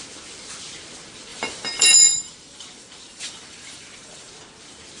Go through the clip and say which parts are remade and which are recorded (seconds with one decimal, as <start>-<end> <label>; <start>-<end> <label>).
0.0-1.3 recorded; 1.3-4.3 remade; 4.3-5.0 recorded